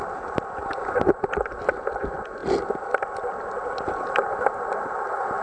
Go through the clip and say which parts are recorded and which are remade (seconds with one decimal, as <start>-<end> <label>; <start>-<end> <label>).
0.0-0.6 recorded; 0.6-1.7 remade; 1.7-5.4 recorded

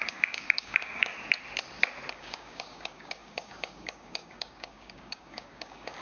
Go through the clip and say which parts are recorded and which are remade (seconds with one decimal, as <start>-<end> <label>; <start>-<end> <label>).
0.0-1.1 remade; 1.1-2.1 recorded; 2.1-6.0 remade

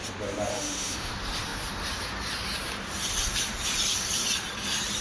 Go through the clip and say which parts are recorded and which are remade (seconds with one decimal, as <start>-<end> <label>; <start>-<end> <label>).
0.0-0.5 recorded; 0.5-1.1 remade; 1.1-5.0 recorded

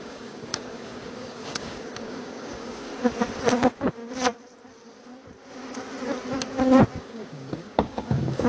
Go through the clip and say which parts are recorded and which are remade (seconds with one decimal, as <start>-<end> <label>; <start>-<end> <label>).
0.0-2.9 remade; 2.9-3.4 recorded; 3.4-4.0 remade; 4.0-7.0 recorded; 7.0-8.5 remade